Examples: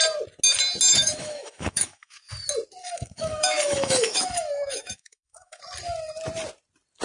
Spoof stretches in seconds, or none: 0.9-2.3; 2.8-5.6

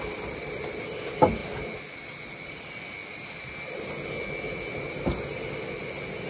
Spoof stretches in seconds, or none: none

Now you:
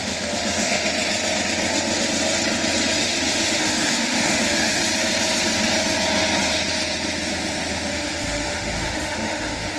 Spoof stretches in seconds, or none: 0.0-0.9; 3.0-4.8; 7.9-9.8